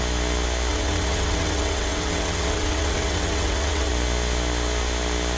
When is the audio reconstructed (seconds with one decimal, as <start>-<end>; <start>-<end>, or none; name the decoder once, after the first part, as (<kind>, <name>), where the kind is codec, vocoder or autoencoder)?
0.7-3.9 (vocoder, WaveNeXt)